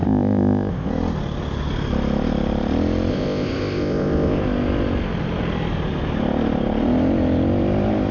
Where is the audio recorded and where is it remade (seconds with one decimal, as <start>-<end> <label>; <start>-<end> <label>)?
0.0-0.9 remade; 0.9-3.1 recorded; 3.1-4.4 remade; 4.4-8.1 recorded